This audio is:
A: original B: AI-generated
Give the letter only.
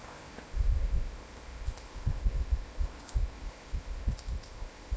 B